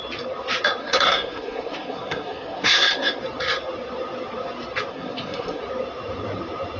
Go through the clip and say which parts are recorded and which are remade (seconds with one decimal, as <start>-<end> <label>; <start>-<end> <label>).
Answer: 0.0-0.8 recorded; 0.8-3.2 remade; 3.2-4.9 recorded; 4.9-5.6 remade; 5.6-6.8 recorded